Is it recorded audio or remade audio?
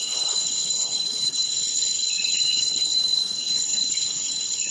remade